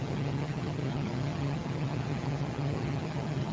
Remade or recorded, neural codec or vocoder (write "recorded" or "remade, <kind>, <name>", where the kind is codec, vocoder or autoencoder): remade, vocoder, HiFi-GAN